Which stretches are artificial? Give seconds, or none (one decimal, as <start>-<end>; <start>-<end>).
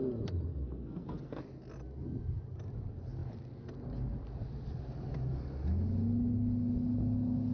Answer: 0.5-1.4